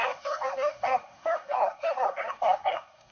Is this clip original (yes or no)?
no